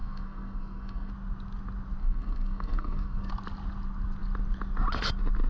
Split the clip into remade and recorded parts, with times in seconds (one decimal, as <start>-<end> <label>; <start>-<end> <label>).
0.0-1.1 remade; 1.1-2.0 recorded; 2.0-3.3 remade; 3.3-5.5 recorded